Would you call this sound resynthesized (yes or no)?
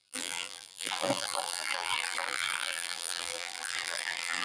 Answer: yes